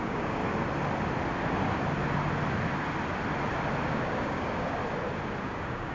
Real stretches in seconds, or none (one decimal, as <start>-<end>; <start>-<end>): 0.4-3.9; 4.8-5.4